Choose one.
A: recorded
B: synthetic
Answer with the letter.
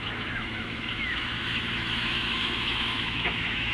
B